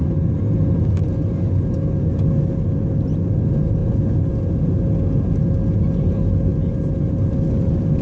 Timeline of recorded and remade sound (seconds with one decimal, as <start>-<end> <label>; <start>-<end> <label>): 0.0-8.0 recorded